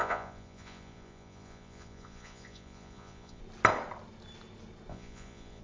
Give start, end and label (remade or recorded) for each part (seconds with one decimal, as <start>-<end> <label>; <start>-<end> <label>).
0.0-3.4 remade; 3.4-4.9 recorded; 4.9-5.6 remade